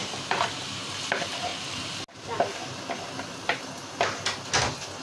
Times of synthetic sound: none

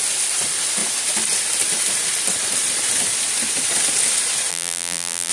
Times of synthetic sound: 4.5-5.3 (vocoder, BigVGAN v2)

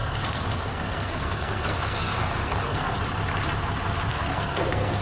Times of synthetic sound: 0.0-3.0 (codec, SNAC); 4.1-5.0

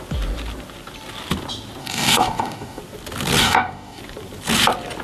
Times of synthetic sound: 1.8-2.8 (codec, DAC); 3.4-4.0

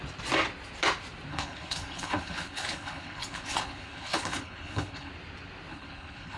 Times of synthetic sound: 1.3-5.1 (codec, HILCodec); 5.7-6.4

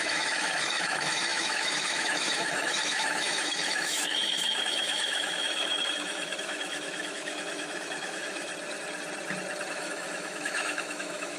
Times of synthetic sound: 0.0-8.5 (autoencoder, DAC-VAE); 9.7-11.4

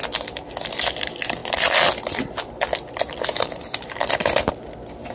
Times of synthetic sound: none